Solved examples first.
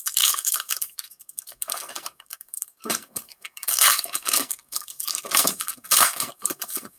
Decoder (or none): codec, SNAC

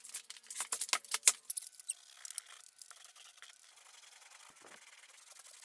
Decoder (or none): none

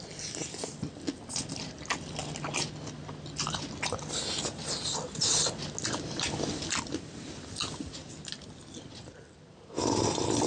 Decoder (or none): none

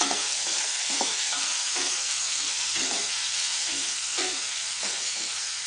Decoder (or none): codec, SNAC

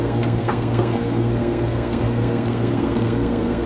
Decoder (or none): codec, SNAC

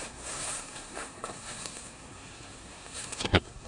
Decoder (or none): codec, SNAC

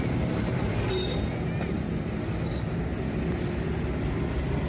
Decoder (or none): none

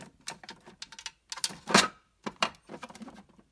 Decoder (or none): none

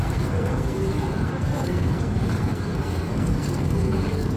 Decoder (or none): codec, SNAC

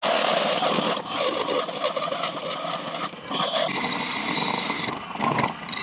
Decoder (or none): none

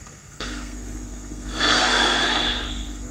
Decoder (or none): codec, SNAC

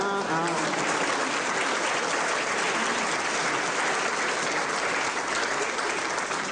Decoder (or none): none